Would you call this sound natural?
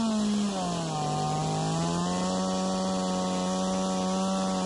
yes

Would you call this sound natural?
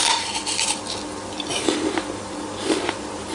no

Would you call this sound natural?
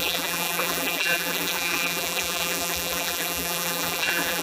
no